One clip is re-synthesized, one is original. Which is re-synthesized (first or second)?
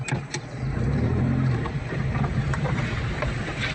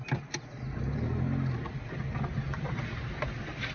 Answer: first